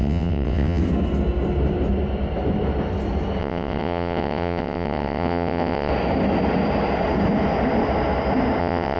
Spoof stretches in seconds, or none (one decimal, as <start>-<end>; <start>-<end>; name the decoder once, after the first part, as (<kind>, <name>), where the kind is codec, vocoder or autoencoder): 0.0-0.8 (vocoder, WaveNeXt); 3.4-5.9; 8.6-9.0